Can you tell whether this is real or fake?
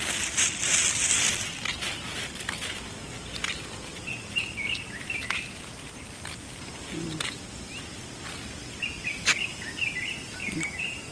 real